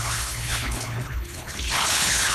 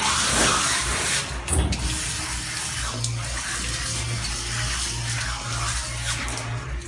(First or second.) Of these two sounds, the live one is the second